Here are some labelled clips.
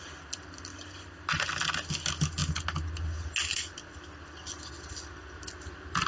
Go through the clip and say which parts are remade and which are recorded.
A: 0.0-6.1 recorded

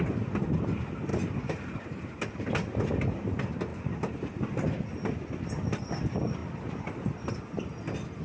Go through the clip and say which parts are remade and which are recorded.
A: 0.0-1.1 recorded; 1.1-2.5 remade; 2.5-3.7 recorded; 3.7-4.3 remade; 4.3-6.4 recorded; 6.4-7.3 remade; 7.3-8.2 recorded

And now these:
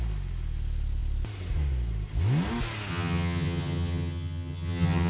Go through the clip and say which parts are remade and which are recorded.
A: 0.0-2.9 recorded; 2.9-5.1 remade